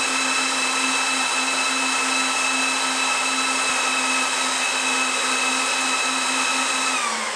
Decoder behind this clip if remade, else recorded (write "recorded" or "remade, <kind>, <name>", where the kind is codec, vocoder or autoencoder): recorded